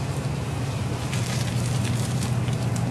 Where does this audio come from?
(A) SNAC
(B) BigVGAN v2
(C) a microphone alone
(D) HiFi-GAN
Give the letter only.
B